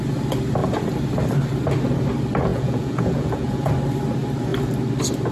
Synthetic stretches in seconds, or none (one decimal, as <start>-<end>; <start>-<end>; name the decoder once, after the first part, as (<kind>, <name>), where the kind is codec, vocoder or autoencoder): 2.5-3.7 (vocoder, Vocos)